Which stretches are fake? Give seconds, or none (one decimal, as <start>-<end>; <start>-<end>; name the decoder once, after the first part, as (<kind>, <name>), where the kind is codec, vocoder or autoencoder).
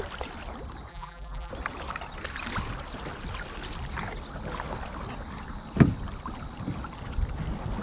0.9-1.5 (vocoder, BigVGAN v2)